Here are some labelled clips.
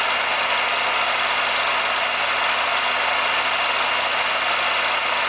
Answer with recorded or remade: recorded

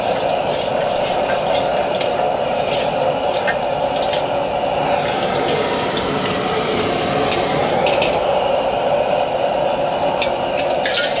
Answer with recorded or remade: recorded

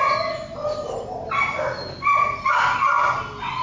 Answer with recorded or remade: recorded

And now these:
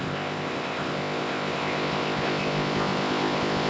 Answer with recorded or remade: remade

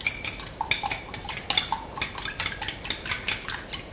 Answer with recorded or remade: recorded